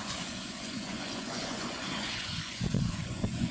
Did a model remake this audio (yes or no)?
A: yes